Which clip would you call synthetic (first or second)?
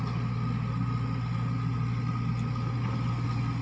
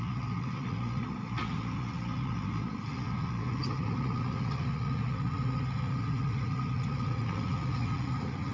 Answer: second